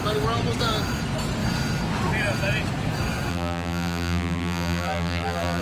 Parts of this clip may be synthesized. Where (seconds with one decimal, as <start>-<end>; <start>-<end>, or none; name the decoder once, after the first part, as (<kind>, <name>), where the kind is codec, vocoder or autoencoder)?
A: 3.3-5.6 (vocoder, BigVGAN v2)